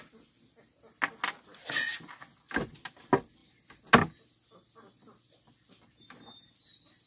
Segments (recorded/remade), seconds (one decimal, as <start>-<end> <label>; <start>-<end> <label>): 0.0-1.6 recorded; 1.6-2.1 remade; 2.1-7.1 recorded